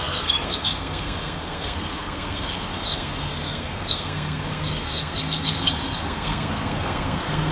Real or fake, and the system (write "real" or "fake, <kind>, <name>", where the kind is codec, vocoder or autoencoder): fake, codec, SNAC